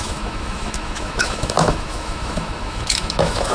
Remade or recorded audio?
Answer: remade